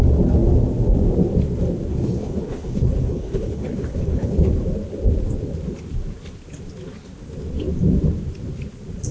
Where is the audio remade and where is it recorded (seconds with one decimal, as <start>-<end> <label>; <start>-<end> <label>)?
0.0-1.9 recorded; 1.9-4.5 remade; 4.5-9.1 recorded